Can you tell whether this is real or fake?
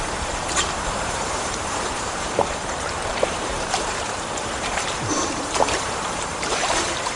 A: fake